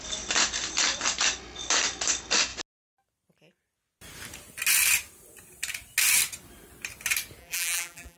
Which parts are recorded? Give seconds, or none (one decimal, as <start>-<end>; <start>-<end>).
0.0-7.4